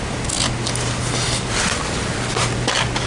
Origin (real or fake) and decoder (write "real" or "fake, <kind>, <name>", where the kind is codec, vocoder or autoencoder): real